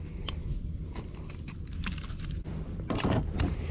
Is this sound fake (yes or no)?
no